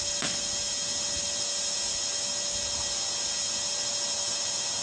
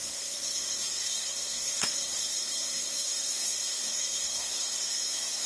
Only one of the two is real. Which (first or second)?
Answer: first